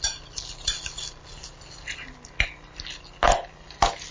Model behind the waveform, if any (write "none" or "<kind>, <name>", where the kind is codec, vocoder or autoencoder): none